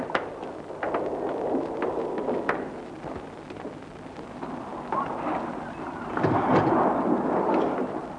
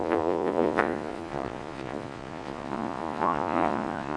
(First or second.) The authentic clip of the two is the first